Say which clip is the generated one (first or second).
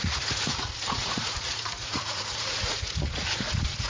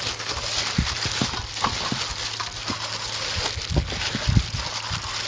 first